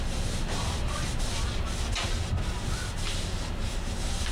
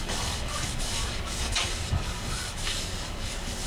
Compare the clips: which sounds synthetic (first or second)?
second